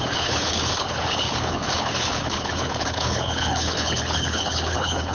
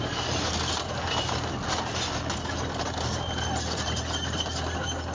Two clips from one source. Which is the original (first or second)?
second